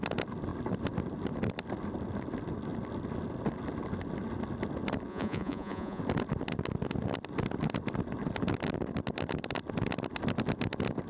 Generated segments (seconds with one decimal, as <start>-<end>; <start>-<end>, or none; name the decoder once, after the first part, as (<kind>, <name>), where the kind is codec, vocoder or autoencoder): 5.1-6.0 (vocoder, Vocos)